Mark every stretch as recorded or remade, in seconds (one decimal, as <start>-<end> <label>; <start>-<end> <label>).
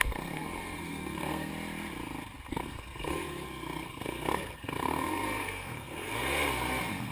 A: 0.0-1.5 remade; 1.5-2.5 recorded; 2.5-7.1 remade